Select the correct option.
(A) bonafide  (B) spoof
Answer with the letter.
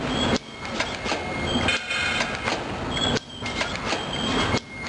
A